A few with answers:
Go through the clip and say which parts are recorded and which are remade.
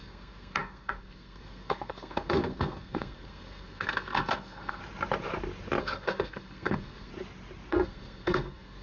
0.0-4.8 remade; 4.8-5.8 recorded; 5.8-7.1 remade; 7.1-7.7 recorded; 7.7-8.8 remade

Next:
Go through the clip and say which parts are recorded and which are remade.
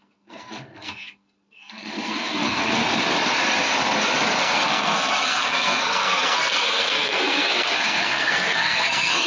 0.0-2.8 remade; 2.8-4.4 recorded; 4.4-9.3 remade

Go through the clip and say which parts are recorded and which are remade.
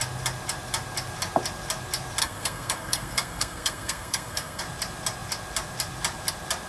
0.0-2.2 recorded; 2.2-4.6 remade; 4.6-6.7 recorded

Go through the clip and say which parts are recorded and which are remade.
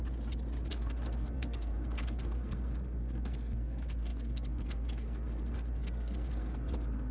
0.0-0.7 recorded; 0.7-7.1 remade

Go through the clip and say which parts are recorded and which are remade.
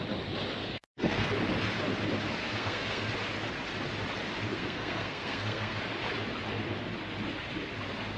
0.0-0.6 recorded; 0.6-1.3 remade; 1.3-2.4 recorded; 2.4-3.1 remade; 3.1-4.5 recorded; 4.5-5.8 remade; 5.8-8.2 recorded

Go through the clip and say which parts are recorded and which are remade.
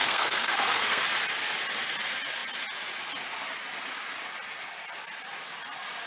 0.0-1.0 remade; 1.0-6.1 recorded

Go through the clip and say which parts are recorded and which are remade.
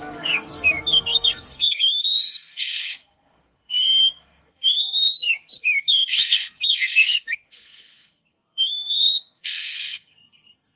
0.0-10.8 remade